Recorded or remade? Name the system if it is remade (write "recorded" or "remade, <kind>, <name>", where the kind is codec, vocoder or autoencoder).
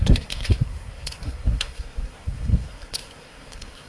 remade, codec, SNAC